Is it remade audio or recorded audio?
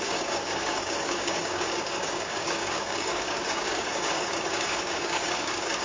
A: remade